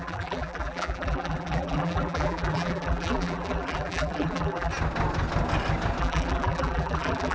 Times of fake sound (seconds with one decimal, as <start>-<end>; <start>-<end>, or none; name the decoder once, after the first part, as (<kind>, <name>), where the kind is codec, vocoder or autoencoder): 0.0-4.7 (vocoder, BigVGAN v2); 6.0-7.3